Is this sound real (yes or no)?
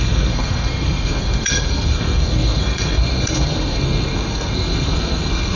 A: no